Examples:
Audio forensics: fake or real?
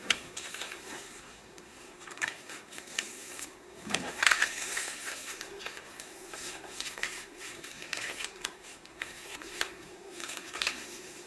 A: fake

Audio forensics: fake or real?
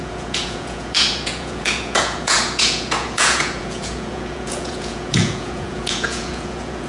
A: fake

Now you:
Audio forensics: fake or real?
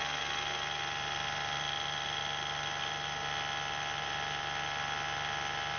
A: real